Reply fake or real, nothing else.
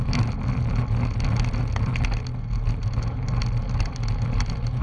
real